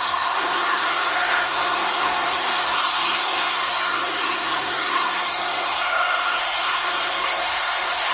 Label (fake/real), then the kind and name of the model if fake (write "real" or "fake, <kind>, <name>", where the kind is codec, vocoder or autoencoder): fake, codec, SNAC